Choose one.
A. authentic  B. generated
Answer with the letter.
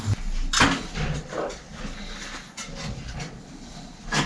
A